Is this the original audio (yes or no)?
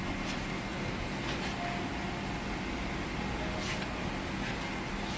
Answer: yes